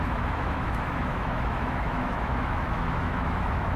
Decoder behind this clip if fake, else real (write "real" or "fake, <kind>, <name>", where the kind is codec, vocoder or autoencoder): fake, autoencoder, DAC-VAE